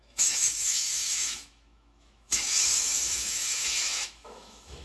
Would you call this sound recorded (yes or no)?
no